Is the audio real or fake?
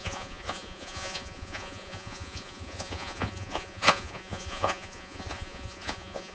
fake